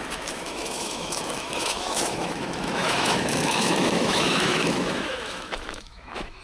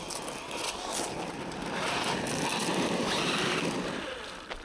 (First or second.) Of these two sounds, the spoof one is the first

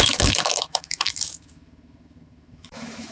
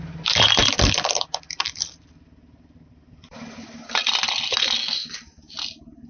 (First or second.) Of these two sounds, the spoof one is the first